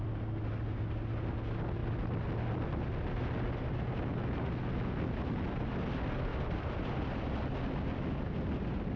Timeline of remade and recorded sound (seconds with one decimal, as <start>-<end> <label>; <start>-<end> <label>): 0.0-9.0 recorded